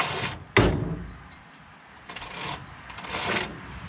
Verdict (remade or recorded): recorded